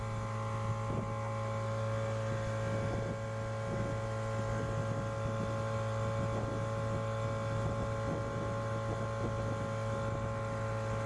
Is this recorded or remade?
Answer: recorded